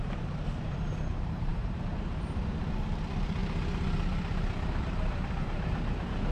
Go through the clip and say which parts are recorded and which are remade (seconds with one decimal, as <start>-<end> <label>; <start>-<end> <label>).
0.0-3.4 remade; 3.4-4.8 recorded; 4.8-6.3 remade